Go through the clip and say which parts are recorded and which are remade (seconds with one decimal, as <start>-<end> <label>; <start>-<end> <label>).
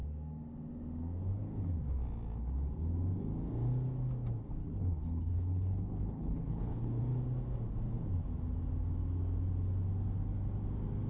0.0-4.6 recorded; 4.6-7.0 remade; 7.0-11.1 recorded